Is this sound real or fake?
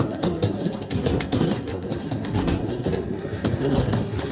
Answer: fake